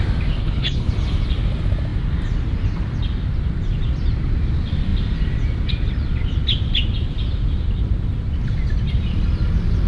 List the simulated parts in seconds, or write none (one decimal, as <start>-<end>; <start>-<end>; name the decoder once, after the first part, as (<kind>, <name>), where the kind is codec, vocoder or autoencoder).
0.4-0.9 (codec, HILCodec)